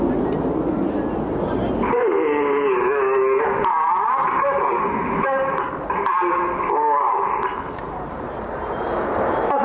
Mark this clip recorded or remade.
recorded